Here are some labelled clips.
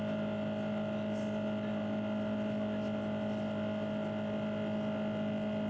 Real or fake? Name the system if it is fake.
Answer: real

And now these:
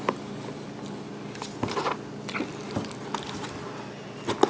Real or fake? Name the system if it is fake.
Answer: real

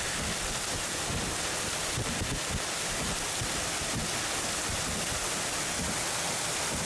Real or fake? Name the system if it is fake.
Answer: real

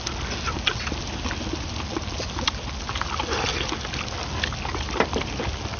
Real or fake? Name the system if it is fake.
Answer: real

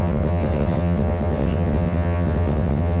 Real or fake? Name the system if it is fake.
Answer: fake, vocoder, WaveNeXt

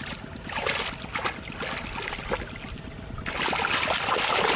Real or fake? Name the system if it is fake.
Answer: real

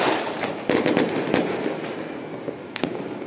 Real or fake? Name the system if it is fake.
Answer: real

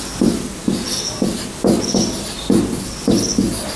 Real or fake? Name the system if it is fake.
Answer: real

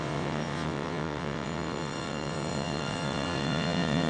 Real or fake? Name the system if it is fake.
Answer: fake, vocoder, WaveNeXt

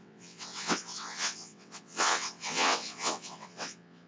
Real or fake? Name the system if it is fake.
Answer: fake, vocoder, WaveNeXt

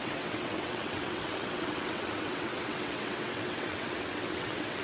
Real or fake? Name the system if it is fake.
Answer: fake, vocoder, WaveNeXt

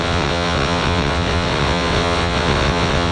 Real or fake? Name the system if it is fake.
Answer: fake, vocoder, WaveNeXt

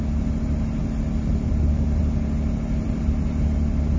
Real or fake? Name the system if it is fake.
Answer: real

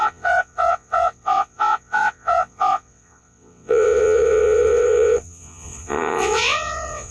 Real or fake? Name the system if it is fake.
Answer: fake, vocoder, WaveNeXt